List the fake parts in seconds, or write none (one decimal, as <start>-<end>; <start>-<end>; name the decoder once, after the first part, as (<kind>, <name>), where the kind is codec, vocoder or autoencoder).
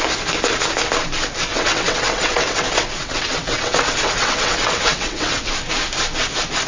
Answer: 1.5-5.5 (vocoder, WaveNeXt)